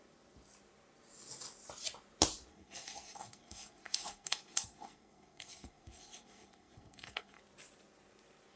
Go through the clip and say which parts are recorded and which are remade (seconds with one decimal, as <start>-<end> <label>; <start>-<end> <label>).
0.0-2.5 recorded; 2.5-7.4 remade; 7.4-8.6 recorded